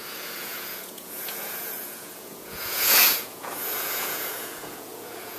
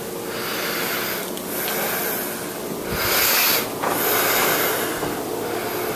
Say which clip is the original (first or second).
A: second